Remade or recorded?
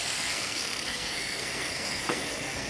remade